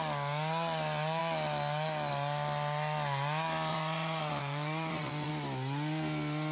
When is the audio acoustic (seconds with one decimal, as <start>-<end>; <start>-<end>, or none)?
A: 0.0-3.7; 5.3-6.5